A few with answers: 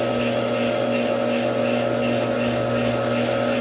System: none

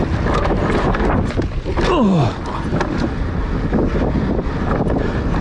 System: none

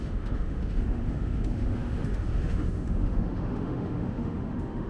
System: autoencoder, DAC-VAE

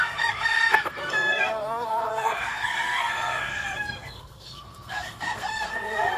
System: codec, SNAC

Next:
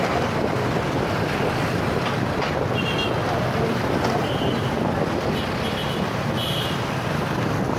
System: none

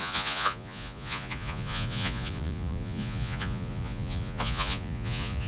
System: vocoder, Vocos